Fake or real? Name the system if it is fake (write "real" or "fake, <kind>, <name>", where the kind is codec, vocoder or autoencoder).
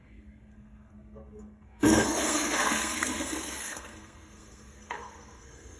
fake, codec, SNAC